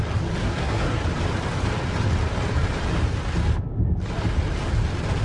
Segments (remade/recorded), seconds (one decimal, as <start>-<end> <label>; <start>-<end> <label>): 0.0-0.4 recorded; 0.4-1.0 remade; 1.0-5.2 recorded